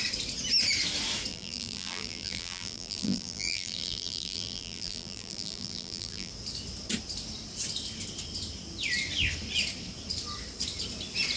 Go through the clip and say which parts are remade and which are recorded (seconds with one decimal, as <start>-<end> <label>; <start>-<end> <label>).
0.0-1.3 recorded; 1.3-6.3 remade; 6.3-11.4 recorded